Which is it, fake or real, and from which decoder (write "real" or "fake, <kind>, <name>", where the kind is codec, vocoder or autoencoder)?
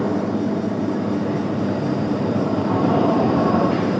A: fake, vocoder, BigVGAN v2